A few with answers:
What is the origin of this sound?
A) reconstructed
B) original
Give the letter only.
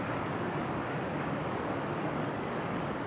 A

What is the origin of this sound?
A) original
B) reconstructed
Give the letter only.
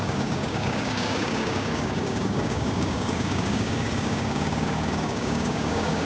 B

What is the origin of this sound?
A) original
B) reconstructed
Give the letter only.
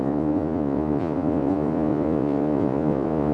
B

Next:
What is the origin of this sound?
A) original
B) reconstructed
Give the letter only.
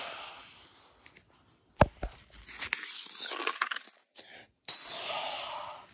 A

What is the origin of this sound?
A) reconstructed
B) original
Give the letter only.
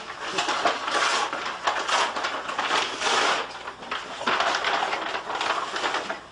B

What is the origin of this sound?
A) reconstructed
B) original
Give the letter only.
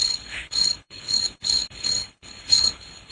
A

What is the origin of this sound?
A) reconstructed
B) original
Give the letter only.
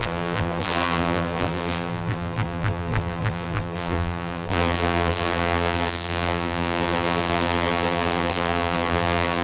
A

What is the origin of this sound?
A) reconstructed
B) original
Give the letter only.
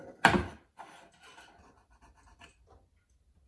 B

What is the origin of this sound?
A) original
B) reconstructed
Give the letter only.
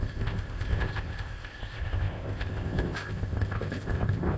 B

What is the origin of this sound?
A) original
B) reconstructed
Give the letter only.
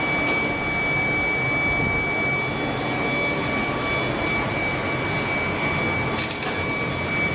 A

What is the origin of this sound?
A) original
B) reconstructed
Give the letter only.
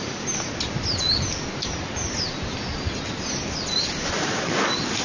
A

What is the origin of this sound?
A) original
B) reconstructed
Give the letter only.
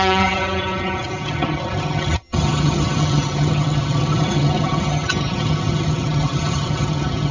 B